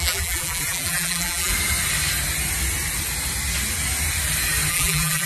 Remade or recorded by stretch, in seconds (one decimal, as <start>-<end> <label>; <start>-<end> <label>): 0.0-1.5 remade; 1.5-4.7 recorded; 4.7-5.3 remade